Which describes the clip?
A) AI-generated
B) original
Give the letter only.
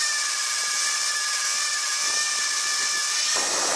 B